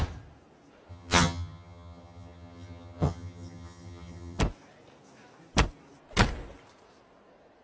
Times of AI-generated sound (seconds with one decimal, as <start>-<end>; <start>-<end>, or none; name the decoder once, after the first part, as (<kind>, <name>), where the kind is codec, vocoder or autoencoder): 0.9-4.4 (vocoder, HiFi-GAN)